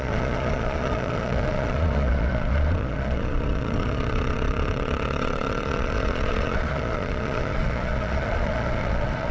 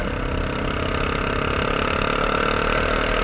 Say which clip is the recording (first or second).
second